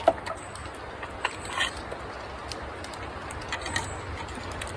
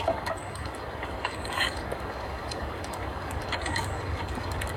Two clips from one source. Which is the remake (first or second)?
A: second